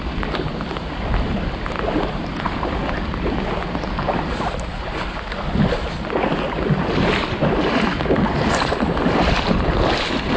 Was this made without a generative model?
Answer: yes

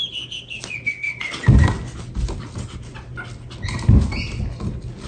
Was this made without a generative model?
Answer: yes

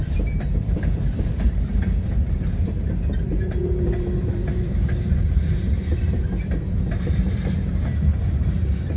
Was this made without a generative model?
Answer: no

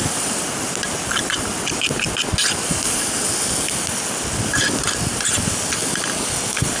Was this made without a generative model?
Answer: yes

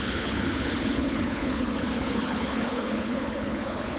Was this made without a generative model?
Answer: no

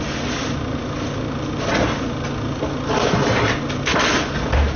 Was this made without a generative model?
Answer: yes